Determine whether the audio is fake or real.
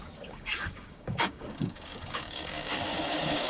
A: fake